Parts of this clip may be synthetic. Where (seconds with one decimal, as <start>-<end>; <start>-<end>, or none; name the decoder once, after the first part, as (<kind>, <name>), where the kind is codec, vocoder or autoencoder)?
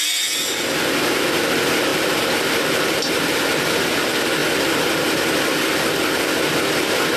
none